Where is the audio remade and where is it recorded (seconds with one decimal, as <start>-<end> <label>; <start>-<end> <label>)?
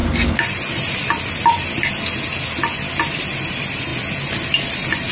0.0-3.0 recorded; 3.0-3.9 remade; 3.9-5.1 recorded